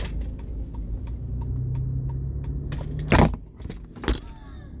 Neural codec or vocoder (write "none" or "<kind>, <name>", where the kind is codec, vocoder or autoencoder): none